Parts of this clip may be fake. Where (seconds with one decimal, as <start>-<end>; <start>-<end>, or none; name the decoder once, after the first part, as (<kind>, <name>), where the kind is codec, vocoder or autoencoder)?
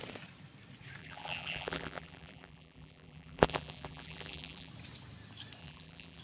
1.0-4.7 (vocoder, BigVGAN v2); 5.6-6.2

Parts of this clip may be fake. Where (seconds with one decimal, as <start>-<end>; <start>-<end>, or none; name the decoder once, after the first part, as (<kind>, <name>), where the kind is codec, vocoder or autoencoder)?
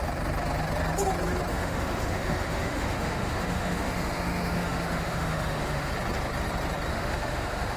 1.5-5.9 (autoencoder, DAC-VAE); 6.9-7.8